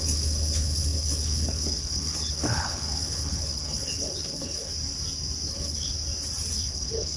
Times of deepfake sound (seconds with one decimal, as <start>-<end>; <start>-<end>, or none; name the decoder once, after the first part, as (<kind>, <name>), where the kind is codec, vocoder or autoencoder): 0.0-4.7 (codec, HILCodec); 5.5-5.9; 6.5-7.2